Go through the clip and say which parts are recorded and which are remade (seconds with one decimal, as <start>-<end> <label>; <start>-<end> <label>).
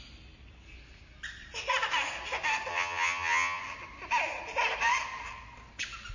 0.0-2.7 recorded; 2.7-3.6 remade; 3.6-6.1 recorded